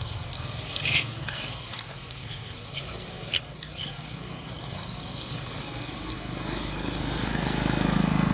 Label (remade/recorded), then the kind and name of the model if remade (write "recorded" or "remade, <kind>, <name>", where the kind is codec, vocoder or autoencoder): remade, codec, SNAC